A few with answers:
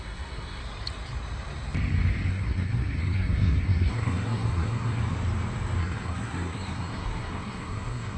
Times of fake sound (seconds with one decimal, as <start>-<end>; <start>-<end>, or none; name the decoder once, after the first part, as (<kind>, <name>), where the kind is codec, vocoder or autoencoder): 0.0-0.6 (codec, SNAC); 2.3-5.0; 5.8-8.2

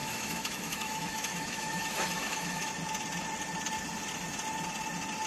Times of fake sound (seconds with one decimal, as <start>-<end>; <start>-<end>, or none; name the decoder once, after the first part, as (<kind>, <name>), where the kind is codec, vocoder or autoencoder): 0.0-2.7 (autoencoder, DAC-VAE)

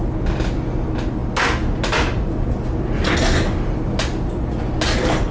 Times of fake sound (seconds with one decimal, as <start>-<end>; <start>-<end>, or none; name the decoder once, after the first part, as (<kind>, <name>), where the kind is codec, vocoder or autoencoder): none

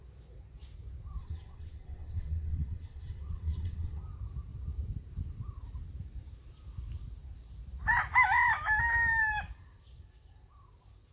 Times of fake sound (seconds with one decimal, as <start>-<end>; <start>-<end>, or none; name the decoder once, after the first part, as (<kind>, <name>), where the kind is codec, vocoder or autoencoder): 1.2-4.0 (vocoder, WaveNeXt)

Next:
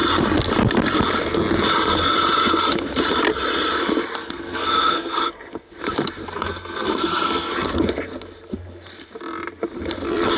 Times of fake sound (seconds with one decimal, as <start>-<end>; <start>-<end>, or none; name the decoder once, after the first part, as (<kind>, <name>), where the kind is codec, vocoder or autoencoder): 4.2-5.2 (codec, SNAC); 6.2-7.5

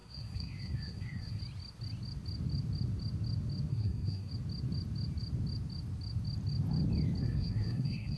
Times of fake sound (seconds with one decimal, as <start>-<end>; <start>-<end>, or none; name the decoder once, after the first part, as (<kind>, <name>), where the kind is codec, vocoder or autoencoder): 0.0-1.4 (codec, SNAC); 3.7-4.3; 7.2-8.2

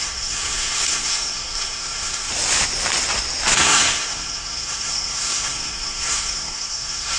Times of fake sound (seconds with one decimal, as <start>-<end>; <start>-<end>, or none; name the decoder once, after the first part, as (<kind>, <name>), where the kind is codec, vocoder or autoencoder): 0.0-2.3 (codec, SNAC); 3.6-7.2

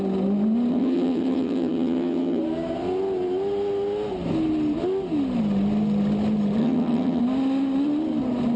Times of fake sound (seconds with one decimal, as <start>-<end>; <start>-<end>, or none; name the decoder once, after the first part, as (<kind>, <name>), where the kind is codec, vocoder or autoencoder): 0.7-2.4 (vocoder, HiFi-GAN); 6.6-7.2